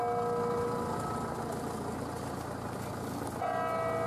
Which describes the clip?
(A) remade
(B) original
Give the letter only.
B